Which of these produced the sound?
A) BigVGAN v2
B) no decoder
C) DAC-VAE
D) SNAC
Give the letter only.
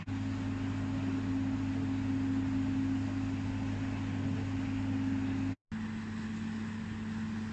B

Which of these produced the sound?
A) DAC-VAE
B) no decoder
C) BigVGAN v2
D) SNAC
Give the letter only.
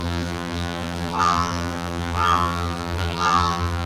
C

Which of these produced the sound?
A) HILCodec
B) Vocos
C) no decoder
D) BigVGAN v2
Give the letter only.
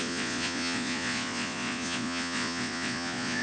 B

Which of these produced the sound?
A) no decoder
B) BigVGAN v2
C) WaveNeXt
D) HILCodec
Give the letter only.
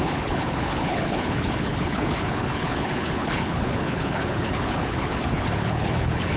D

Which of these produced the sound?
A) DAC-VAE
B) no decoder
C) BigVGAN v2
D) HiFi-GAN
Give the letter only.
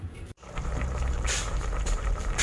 C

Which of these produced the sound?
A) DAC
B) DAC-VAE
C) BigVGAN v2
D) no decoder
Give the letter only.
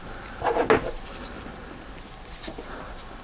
D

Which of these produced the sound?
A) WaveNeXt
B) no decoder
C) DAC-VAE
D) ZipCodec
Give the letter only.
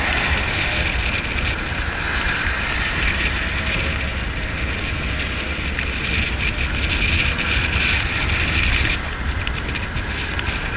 B